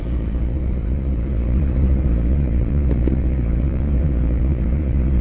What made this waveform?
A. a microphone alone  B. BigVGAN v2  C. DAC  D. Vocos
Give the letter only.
D